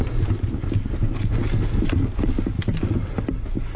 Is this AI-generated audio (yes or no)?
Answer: no